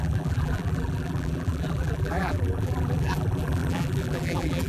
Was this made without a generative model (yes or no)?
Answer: no